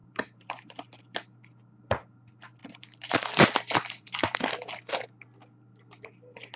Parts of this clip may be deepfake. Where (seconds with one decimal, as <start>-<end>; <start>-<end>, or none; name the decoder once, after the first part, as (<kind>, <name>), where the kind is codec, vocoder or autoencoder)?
0.0-1.0 (vocoder, BigVGAN v2); 2.6-4.4